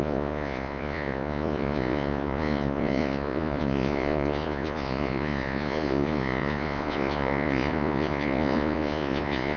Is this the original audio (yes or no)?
no